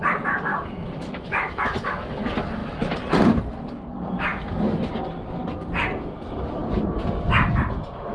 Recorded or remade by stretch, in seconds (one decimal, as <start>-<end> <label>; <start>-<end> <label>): 0.0-0.5 recorded; 0.5-2.2 remade; 2.2-8.1 recorded